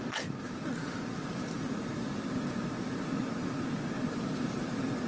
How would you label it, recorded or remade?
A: recorded